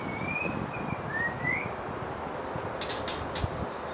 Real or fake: real